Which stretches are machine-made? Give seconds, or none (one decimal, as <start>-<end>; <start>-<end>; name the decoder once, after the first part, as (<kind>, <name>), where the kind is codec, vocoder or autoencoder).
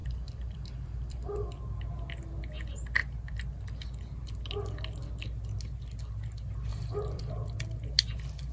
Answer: 0.0-1.5 (vocoder, BigVGAN v2); 6.7-7.3